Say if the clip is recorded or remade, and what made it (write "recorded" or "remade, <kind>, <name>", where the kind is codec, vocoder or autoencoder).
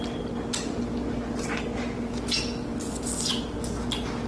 recorded